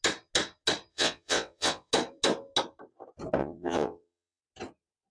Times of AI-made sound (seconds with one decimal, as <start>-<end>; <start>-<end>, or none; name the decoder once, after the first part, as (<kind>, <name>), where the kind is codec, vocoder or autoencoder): 0.9-1.9 (vocoder, WaveNeXt); 3.4-4.4